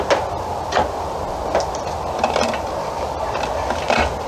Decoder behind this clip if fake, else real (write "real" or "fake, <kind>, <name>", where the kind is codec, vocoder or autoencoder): real